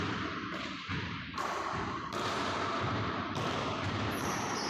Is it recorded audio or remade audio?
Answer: remade